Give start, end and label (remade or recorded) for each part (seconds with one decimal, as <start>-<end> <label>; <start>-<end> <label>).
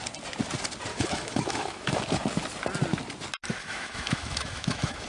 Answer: 0.0-0.9 recorded; 0.9-2.0 remade; 2.0-3.6 recorded; 3.6-5.1 remade